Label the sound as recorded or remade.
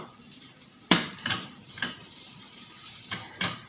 remade